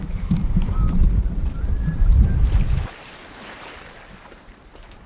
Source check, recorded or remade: remade